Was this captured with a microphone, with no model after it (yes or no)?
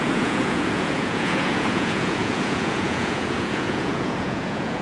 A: no